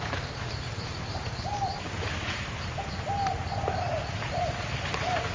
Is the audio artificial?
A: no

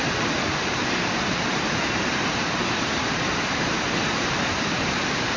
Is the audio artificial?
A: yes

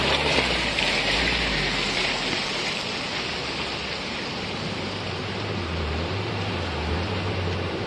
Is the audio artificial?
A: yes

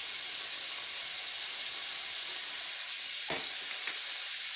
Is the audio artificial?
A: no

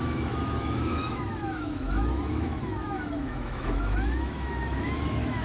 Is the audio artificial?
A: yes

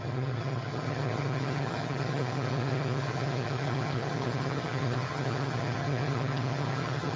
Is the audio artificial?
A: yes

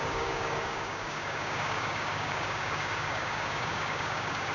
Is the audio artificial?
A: yes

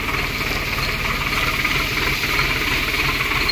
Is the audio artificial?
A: no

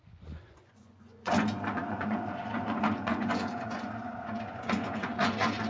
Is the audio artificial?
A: yes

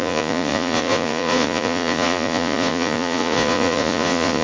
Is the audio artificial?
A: yes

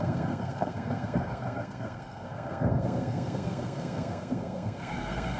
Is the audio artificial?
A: yes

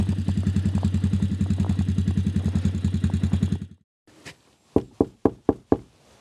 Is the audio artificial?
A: no